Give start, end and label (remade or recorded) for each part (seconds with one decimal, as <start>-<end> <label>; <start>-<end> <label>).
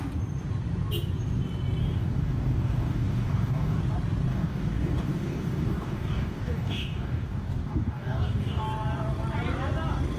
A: 0.0-1.8 recorded; 1.8-3.8 remade; 3.8-4.3 recorded; 4.3-8.6 remade; 8.6-10.2 recorded